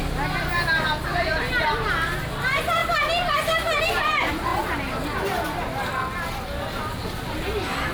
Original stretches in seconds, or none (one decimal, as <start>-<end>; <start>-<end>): 0.0-7.9